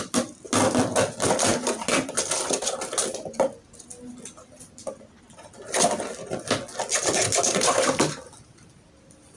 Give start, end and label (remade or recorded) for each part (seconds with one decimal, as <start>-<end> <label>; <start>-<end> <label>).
0.0-9.4 recorded